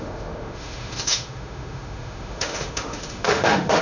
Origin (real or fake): fake